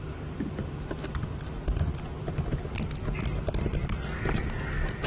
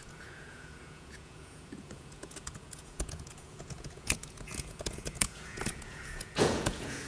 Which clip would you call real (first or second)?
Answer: first